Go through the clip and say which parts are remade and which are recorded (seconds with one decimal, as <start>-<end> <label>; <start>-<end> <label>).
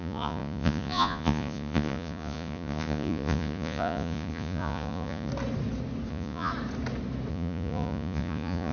0.0-5.3 remade; 5.3-6.1 recorded; 6.1-6.5 remade; 6.5-7.3 recorded; 7.3-8.7 remade